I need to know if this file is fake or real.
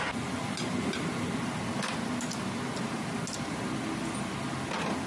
real